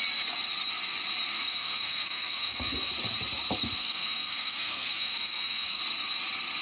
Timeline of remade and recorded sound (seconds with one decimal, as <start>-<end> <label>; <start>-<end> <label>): 0.0-1.5 recorded; 1.5-2.9 remade; 2.9-3.8 recorded; 3.8-5.8 remade; 5.8-6.6 recorded